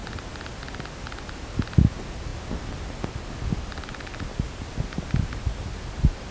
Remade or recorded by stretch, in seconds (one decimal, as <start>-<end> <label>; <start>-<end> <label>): 0.0-6.3 recorded